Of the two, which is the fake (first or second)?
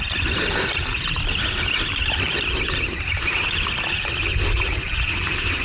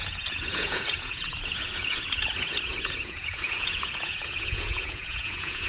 second